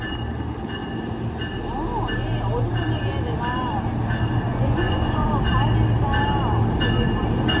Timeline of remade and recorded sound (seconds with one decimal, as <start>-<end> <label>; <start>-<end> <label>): 0.0-4.5 recorded; 4.5-5.3 remade; 5.3-7.6 recorded